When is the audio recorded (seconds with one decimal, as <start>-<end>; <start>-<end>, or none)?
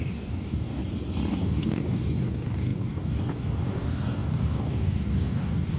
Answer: 0.8-1.3